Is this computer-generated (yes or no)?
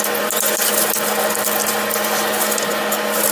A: no